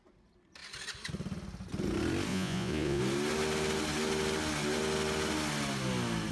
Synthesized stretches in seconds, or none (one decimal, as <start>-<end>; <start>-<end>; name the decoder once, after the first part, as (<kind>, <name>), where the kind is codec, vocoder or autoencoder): 2.3-3.0 (vocoder, Vocos)